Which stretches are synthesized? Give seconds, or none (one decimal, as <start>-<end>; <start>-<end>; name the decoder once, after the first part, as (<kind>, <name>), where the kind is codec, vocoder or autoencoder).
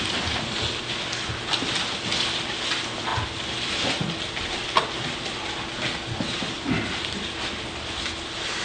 none